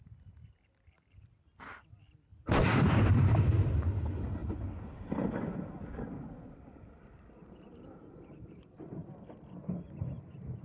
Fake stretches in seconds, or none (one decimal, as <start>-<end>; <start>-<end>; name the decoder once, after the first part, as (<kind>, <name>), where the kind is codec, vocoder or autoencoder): 0.0-4.4 (vocoder, BigVGAN v2); 6.5-10.6